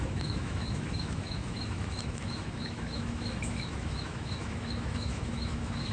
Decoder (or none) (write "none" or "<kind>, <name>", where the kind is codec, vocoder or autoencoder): autoencoder, DAC-VAE